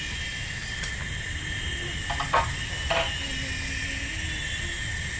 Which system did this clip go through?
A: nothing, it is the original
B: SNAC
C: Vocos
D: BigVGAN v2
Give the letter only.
A